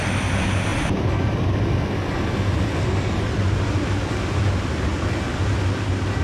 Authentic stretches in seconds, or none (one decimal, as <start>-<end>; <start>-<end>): 0.0-6.2